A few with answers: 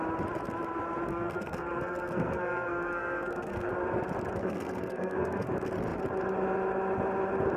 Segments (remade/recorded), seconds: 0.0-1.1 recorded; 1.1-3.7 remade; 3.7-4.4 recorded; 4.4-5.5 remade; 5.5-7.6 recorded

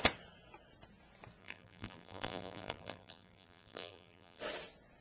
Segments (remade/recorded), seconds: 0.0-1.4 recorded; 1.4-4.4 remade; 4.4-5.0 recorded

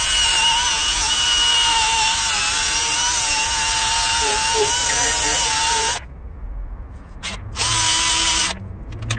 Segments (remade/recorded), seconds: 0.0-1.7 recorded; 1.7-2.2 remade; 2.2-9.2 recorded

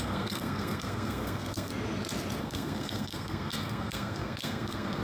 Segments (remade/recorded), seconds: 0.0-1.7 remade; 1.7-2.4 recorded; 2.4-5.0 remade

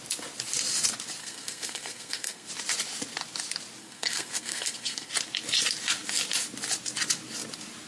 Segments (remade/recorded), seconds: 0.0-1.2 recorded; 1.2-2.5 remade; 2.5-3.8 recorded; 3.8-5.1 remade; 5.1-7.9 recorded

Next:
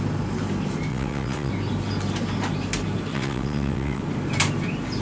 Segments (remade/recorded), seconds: 0.0-0.9 recorded; 0.9-1.5 remade; 1.5-3.1 recorded; 3.1-4.0 remade; 4.0-5.0 recorded